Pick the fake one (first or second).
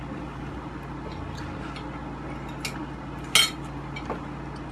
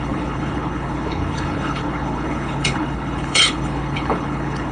second